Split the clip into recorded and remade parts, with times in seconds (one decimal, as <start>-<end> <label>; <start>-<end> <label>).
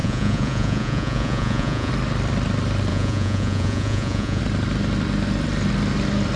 0.0-1.9 remade; 1.9-2.9 recorded; 2.9-4.4 remade; 4.4-6.4 recorded